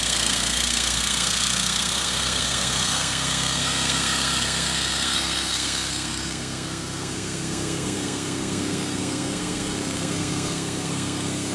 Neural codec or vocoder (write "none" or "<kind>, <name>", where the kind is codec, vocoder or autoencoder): codec, SNAC